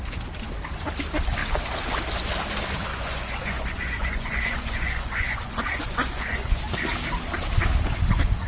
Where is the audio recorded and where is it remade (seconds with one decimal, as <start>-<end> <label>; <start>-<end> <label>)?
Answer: 0.0-2.9 recorded; 2.9-6.6 remade; 6.6-8.5 recorded